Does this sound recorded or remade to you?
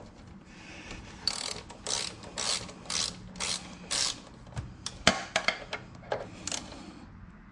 recorded